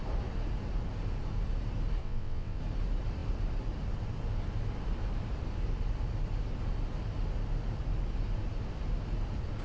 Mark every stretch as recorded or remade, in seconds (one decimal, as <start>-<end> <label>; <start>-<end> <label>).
0.0-2.0 recorded; 2.0-2.6 remade; 2.6-9.6 recorded